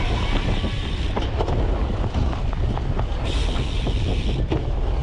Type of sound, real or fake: real